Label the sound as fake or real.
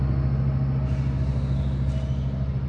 real